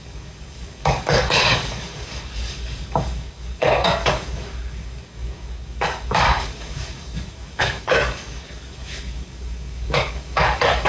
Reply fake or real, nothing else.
fake